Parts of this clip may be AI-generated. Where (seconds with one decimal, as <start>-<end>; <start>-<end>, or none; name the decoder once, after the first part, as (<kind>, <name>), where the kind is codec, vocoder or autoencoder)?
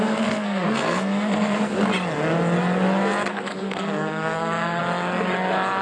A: 0.0-1.7 (codec, SNAC); 3.3-4.8